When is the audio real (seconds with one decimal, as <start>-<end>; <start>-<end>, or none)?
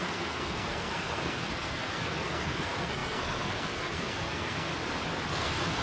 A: 4.7-5.3